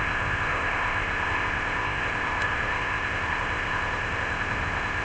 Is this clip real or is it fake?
fake